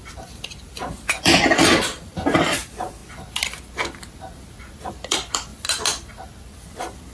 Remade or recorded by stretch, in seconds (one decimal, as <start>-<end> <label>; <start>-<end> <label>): 0.0-3.0 remade; 3.0-4.9 recorded; 4.9-5.5 remade; 5.5-6.1 recorded; 6.1-7.1 remade